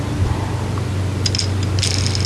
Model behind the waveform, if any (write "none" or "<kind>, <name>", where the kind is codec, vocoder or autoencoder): none